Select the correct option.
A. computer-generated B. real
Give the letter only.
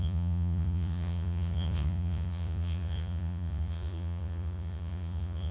A